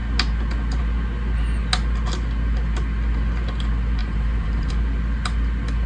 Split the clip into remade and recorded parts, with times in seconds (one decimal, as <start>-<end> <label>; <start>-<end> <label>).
0.0-4.0 recorded; 4.0-4.7 remade; 4.7-5.9 recorded